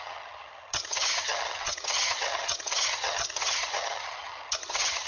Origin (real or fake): fake